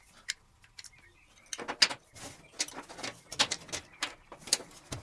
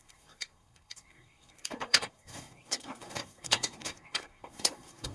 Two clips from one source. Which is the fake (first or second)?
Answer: second